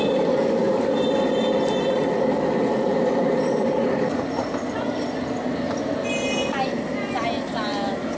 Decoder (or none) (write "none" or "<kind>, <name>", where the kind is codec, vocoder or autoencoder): none